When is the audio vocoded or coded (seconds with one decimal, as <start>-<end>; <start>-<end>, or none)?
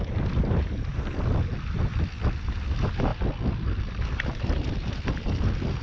none